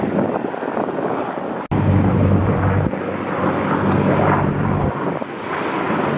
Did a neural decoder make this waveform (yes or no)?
no